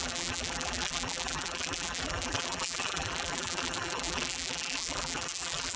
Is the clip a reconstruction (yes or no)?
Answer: yes